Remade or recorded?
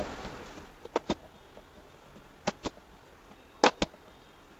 recorded